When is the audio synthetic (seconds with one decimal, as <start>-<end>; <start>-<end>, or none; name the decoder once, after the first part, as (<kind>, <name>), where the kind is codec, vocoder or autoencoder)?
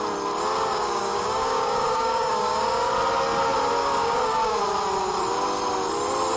0.7-2.9 (codec, DAC); 3.8-4.6